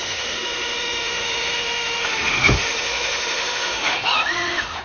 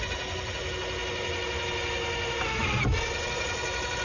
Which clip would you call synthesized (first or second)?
first